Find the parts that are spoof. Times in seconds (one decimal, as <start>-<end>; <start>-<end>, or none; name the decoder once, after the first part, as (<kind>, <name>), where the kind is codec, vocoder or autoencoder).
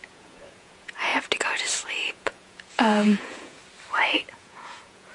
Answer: 0.0-1.1 (vocoder, Vocos); 2.1-3.6; 4.3-5.1